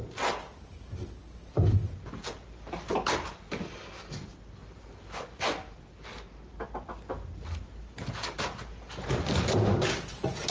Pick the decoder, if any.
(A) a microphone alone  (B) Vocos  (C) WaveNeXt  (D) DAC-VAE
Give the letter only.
A